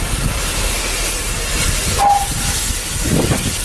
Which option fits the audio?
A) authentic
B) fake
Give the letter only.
A